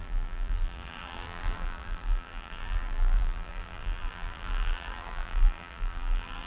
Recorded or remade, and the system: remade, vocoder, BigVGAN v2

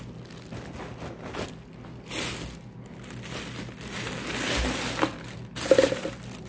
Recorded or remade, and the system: recorded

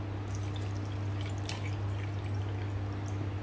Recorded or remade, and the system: recorded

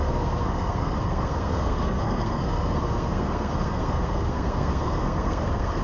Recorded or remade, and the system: remade, codec, SNAC